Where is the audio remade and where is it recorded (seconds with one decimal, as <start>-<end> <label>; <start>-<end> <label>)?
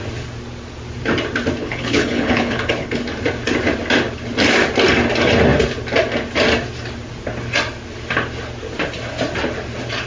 0.0-1.6 recorded; 1.6-3.0 remade; 3.0-10.1 recorded